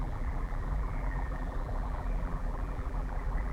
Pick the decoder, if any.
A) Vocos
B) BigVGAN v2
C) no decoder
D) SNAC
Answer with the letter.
B